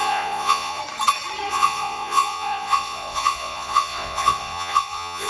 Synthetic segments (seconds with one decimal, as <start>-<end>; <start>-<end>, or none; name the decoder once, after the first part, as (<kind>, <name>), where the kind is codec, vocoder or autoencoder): 0.0-0.8 (vocoder, Vocos); 1.5-5.3